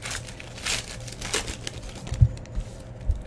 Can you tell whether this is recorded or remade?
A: recorded